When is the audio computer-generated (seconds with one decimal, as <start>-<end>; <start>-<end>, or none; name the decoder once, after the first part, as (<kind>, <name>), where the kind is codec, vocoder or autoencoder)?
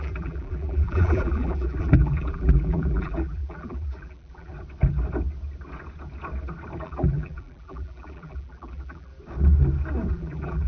0.0-4.5 (vocoder, BigVGAN v2); 6.8-9.1; 10.1-10.7